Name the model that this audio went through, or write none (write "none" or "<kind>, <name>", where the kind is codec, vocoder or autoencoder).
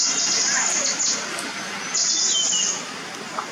none